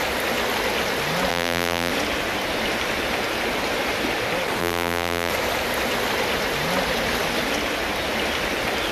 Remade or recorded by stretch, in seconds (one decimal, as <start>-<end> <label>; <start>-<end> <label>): 0.0-1.3 recorded; 1.3-1.9 remade; 1.9-4.6 recorded; 4.6-5.3 remade; 5.3-8.9 recorded